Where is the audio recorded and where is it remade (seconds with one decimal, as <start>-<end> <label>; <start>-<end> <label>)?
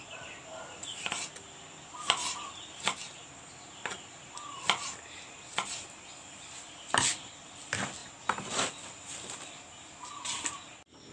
0.0-11.1 recorded